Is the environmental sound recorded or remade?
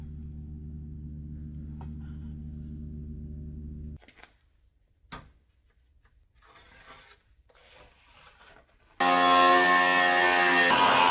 recorded